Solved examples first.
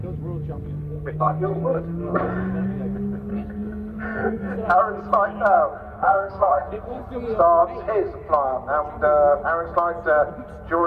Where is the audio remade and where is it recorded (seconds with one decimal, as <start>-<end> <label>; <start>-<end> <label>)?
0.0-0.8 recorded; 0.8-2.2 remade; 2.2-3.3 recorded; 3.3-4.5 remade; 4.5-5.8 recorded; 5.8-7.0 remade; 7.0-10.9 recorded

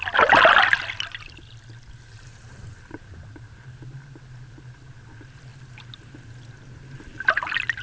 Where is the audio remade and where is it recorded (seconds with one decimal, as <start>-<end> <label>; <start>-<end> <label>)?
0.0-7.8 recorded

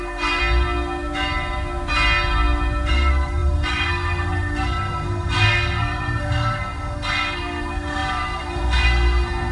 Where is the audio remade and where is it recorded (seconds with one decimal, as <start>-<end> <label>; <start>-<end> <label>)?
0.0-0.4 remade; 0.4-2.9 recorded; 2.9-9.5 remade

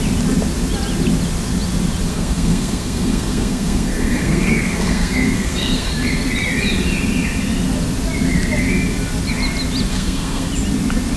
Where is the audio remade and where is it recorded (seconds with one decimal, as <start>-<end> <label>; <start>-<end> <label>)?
0.0-2.1 recorded; 2.1-5.9 remade; 5.9-9.9 recorded; 9.9-10.5 remade; 10.5-11.2 recorded